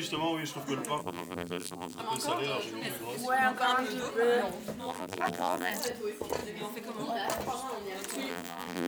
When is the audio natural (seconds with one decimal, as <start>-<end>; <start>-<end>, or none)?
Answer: 0.0-1.0; 2.0-4.8; 5.7-8.3